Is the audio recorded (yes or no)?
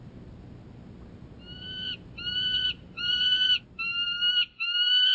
yes